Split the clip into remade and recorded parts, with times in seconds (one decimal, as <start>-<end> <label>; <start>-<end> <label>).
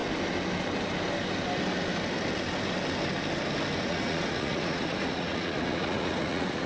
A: 0.0-3.8 recorded; 3.8-6.7 remade